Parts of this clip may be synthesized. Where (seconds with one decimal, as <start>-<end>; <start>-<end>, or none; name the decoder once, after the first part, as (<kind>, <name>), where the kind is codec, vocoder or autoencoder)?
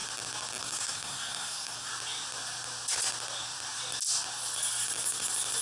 0.6-1.9 (codec, SNAC)